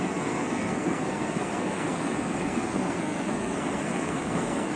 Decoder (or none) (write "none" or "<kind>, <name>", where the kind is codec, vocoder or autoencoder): codec, SNAC